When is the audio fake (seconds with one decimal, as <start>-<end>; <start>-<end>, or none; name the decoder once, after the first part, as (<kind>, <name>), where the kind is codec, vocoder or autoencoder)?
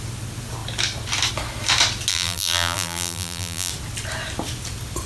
2.1-3.7 (vocoder, BigVGAN v2)